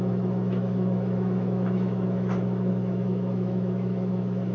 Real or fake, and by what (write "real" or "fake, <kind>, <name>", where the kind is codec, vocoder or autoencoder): fake, autoencoder, DAC-VAE